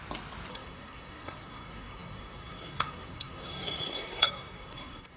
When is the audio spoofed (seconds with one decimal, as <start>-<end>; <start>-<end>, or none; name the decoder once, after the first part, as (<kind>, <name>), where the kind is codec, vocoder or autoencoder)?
0.5-5.2 (codec, SNAC)